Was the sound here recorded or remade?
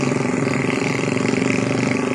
remade